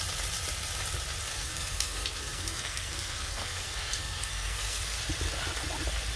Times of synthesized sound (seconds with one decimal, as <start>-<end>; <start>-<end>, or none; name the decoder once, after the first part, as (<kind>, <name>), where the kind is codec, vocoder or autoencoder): 1.3-5.0 (codec, SNAC)